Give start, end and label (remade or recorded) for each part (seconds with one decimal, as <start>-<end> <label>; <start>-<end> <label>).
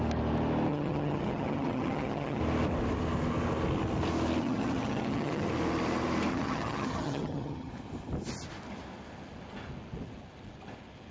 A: 0.0-0.7 recorded; 0.7-2.4 remade; 2.4-4.4 recorded; 4.4-5.5 remade; 5.5-6.3 recorded; 6.3-7.7 remade; 7.7-11.1 recorded